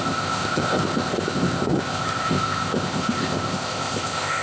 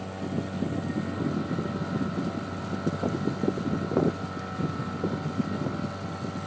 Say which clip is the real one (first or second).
second